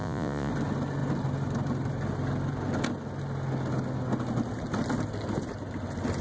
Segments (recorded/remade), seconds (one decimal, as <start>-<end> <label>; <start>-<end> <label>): 0.0-0.5 remade; 0.5-6.2 recorded

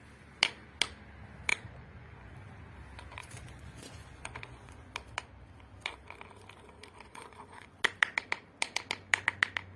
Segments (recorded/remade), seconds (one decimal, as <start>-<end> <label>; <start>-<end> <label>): 0.0-1.5 recorded; 1.5-2.3 remade; 2.3-3.2 recorded; 3.2-4.9 remade; 4.9-7.1 recorded; 7.1-7.8 remade; 7.8-9.8 recorded

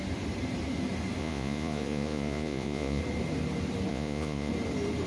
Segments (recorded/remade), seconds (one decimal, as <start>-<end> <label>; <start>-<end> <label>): 0.0-1.2 recorded; 1.2-3.0 remade; 3.0-3.9 recorded; 3.9-4.5 remade; 4.5-5.1 recorded

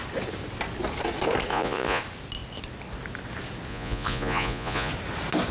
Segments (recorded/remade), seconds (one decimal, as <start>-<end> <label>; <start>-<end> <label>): 0.0-1.5 recorded; 1.5-2.0 remade; 2.0-3.7 recorded; 3.7-4.9 remade; 4.9-5.5 recorded

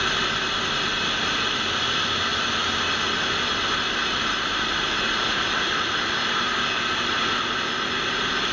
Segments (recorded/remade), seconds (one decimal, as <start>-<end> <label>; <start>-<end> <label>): 0.0-8.5 recorded

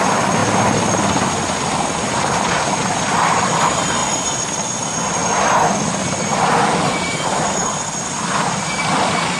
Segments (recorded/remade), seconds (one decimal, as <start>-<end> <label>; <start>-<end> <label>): 0.0-9.4 recorded